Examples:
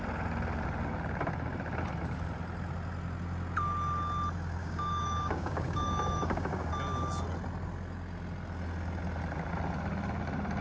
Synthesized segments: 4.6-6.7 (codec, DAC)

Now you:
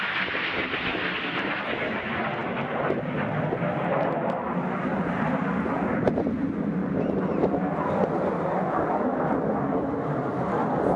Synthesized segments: none

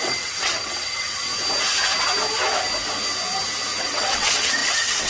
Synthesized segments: 0.0-1.3 (vocoder, WaveNeXt); 3.8-5.1

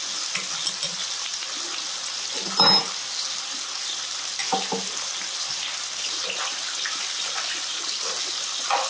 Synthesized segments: none

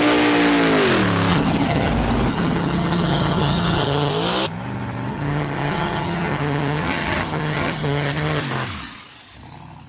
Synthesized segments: 1.3-1.9 (vocoder, HiFi-GAN); 2.3-4.1; 5.1-8.4

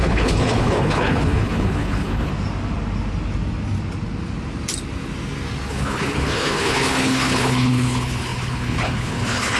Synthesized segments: 0.0-2.3 (codec, HILCodec); 5.7-9.6

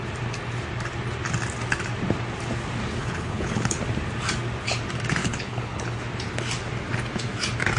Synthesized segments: 3.0-3.8 (codec, HILCodec); 5.2-6.0

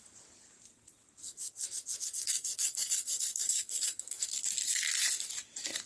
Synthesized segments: 1.2-4.4 (codec, SNAC)